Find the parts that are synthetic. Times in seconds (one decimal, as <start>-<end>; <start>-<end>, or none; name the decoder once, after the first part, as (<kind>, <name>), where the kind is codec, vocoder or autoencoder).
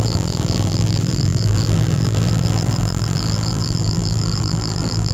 0.0-5.1 (vocoder, BigVGAN v2)